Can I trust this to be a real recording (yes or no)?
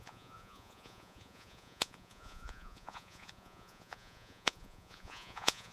no